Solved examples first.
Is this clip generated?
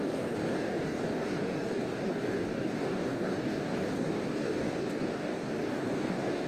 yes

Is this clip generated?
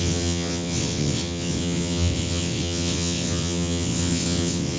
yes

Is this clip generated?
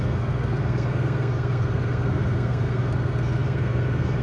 yes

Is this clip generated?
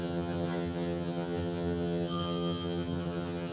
yes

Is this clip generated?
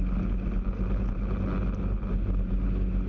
no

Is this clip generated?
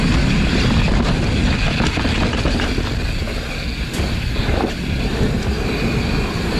no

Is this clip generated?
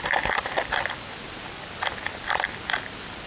no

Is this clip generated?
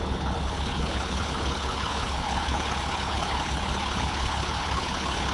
yes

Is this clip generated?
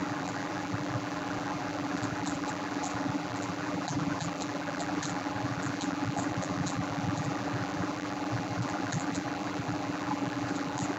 yes